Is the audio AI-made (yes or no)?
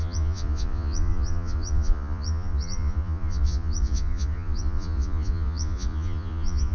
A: yes